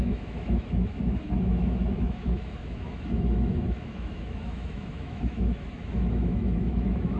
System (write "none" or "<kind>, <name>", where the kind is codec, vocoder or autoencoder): autoencoder, DAC-VAE